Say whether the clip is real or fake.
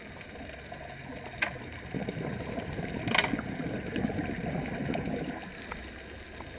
real